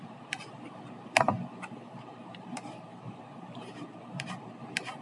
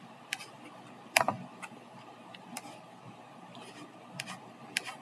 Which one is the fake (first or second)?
first